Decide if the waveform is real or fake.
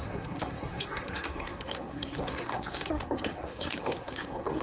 fake